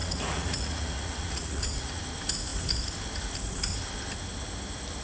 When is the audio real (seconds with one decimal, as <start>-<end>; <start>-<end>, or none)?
2.0-5.0